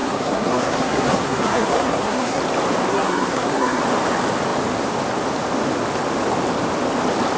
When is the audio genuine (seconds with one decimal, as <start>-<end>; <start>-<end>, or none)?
2.4-2.9; 3.8-7.4